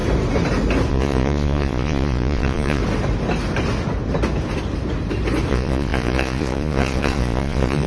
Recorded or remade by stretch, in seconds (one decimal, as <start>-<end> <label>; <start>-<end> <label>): 0.0-0.9 recorded; 0.9-2.8 remade; 2.8-5.5 recorded; 5.5-7.9 remade